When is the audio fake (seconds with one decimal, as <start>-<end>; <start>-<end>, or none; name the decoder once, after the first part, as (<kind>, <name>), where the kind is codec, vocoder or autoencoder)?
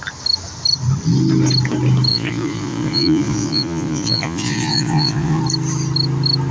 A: 2.1-5.4 (vocoder, Vocos)